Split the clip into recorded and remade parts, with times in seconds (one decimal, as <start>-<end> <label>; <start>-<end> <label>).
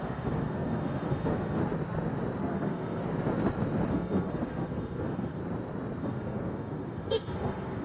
0.0-1.6 remade; 1.6-2.4 recorded; 2.4-3.0 remade; 3.0-3.9 recorded; 3.9-5.4 remade; 5.4-6.0 recorded; 6.0-7.8 remade